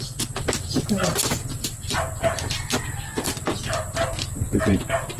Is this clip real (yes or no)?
yes